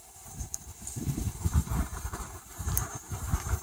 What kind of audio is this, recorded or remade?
remade